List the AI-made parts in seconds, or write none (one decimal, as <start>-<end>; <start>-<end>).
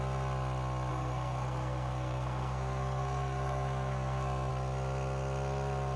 0.9-4.5